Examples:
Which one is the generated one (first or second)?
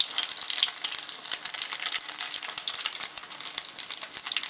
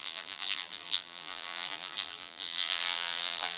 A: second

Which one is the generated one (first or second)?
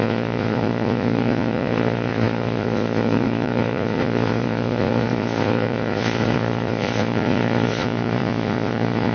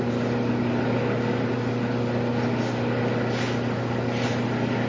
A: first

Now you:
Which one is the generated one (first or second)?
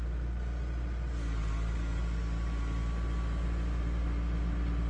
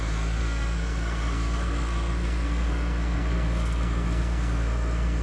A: second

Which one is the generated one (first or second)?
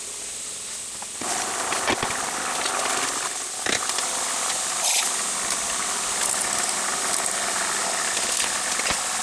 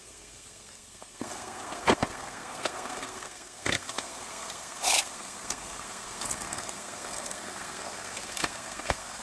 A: second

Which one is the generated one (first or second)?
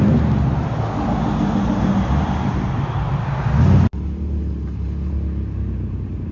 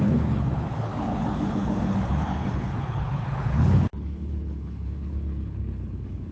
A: second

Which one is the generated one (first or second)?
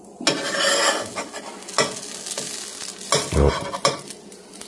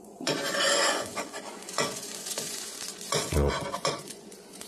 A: second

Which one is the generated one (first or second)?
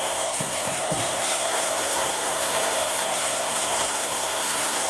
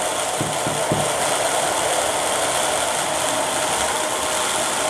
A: first